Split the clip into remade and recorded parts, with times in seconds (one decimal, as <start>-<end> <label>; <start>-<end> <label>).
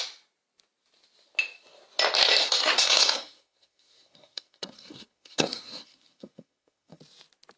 0.0-2.4 recorded; 2.4-7.0 remade; 7.0-7.6 recorded